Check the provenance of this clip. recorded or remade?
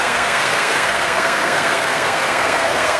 remade